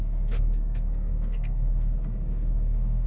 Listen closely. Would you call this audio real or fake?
fake